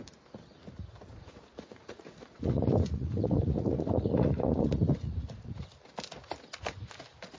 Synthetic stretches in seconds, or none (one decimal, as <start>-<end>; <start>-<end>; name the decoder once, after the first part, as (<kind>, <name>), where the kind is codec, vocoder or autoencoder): 1.1-5.5 (vocoder, Vocos)

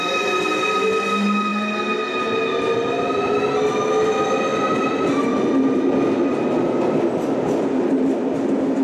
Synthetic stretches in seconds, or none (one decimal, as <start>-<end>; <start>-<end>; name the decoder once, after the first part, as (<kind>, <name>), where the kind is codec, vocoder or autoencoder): none